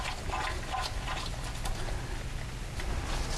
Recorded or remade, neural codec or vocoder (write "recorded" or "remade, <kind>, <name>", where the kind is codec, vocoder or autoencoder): recorded